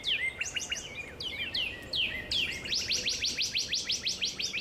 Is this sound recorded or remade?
recorded